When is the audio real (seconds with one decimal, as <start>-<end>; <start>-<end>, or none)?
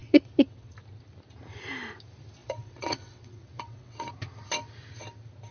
0.7-2.4; 4.1-5.5